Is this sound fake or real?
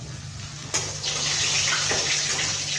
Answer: real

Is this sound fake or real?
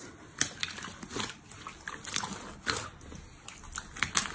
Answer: real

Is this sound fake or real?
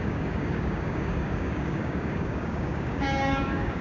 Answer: fake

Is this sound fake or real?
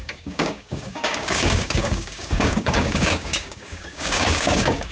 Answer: fake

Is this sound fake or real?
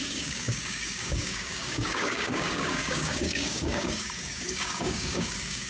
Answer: fake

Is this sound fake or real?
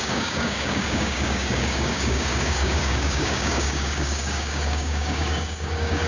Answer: fake